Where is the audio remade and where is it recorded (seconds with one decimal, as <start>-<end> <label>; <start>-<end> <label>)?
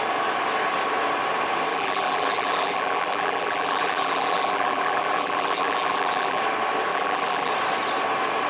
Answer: 0.0-1.7 recorded; 1.7-6.4 remade; 6.4-6.9 recorded; 6.9-7.5 remade; 7.5-8.5 recorded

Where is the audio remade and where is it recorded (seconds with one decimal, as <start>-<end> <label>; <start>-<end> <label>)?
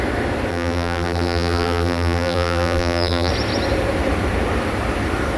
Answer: 0.0-0.5 recorded; 0.5-3.3 remade; 3.3-5.4 recorded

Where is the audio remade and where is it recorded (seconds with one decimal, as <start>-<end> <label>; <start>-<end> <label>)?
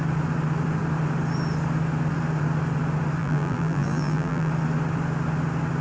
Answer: 0.0-3.2 recorded; 3.2-4.5 remade; 4.5-5.8 recorded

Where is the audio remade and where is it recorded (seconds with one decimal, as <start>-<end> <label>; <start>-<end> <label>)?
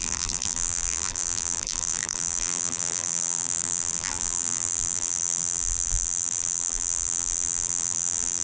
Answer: 0.0-8.4 remade